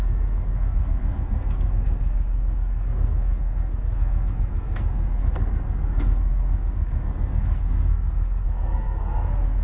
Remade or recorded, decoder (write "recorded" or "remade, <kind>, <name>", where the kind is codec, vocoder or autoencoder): remade, codec, SNAC